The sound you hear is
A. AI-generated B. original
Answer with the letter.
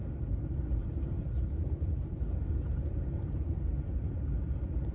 A